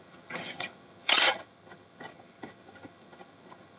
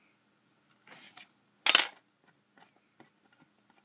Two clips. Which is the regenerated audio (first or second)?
first